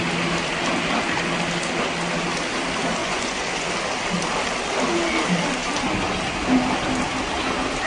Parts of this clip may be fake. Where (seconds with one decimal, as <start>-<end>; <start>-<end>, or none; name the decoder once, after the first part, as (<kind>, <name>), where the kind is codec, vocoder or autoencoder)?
3.0-3.7 (vocoder, Vocos)